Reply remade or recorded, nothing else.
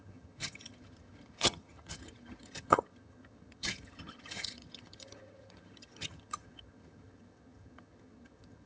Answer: remade